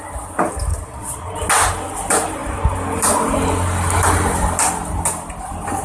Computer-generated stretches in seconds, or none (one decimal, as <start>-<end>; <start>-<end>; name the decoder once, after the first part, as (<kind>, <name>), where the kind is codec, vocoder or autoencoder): 0.7-1.3 (vocoder, Vocos)